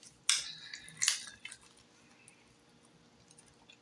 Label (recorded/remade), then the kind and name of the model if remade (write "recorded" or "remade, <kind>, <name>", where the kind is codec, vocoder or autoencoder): recorded